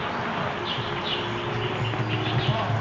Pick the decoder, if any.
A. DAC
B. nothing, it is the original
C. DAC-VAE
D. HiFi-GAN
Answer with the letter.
B